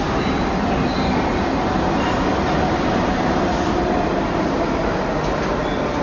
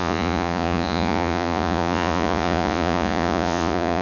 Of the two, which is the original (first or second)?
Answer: first